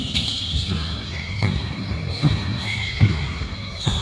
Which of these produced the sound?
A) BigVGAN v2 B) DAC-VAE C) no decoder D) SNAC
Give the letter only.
D